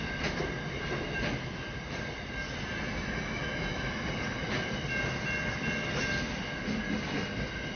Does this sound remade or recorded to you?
recorded